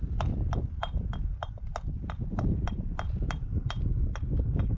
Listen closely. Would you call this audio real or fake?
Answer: real